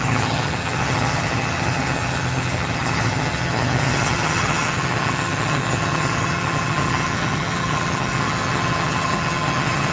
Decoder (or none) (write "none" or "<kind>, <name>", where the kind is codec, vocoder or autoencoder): vocoder, HiFi-GAN